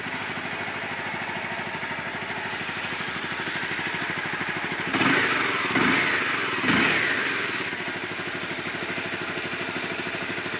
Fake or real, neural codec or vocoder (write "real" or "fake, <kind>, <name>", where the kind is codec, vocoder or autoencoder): real